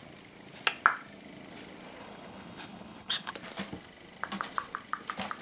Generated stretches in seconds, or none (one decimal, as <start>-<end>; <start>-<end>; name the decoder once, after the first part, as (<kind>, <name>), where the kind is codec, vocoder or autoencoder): 2.0-3.3 (codec, HILCodec)